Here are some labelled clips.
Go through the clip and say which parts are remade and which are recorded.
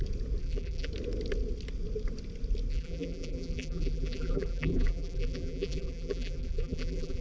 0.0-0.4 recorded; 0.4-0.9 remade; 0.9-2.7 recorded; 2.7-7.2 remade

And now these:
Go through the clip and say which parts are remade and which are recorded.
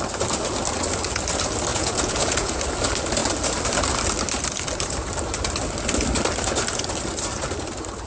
0.0-1.7 recorded; 1.7-2.6 remade; 2.6-8.1 recorded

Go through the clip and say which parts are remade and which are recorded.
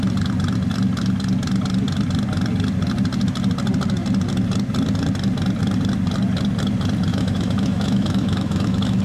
0.0-7.1 recorded; 7.1-9.0 remade